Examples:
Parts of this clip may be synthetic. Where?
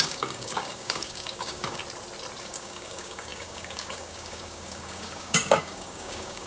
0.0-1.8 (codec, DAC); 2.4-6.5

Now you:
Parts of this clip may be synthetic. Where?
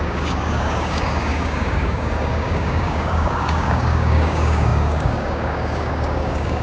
0.0-6.6 (codec, DAC)